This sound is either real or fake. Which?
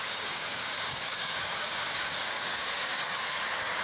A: fake